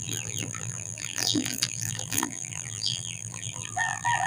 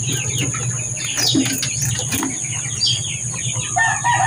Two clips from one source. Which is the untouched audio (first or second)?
second